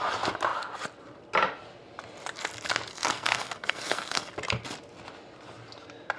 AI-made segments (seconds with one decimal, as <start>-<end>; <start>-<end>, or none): 2.9-4.3